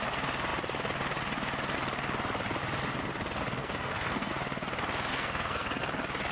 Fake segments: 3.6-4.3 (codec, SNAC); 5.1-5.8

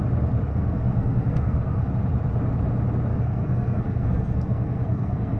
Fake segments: 0.5-1.9 (codec, SNAC); 3.1-5.4

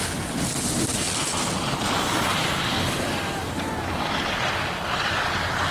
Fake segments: none

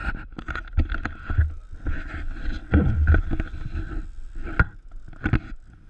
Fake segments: none

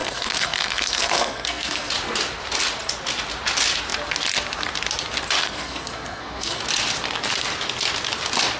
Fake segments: 0.0-1.9 (codec, SNAC); 5.4-6.6

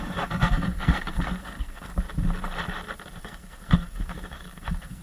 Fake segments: 0.0-1.9 (codec, SNAC); 3.2-5.0